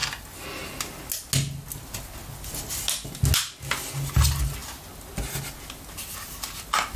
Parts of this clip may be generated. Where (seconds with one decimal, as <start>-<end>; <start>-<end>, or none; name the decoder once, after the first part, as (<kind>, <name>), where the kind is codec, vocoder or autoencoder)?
none